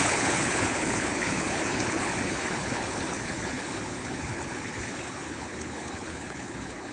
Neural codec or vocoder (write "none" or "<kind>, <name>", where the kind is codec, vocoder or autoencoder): codec, HILCodec